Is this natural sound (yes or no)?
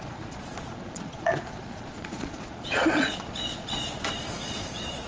no